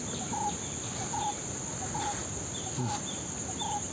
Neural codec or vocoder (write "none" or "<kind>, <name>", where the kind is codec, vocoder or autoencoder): none